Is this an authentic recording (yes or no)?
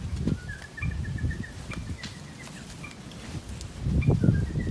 yes